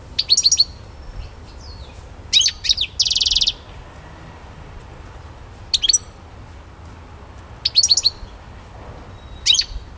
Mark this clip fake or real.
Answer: real